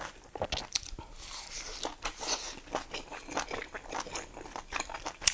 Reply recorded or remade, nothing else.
recorded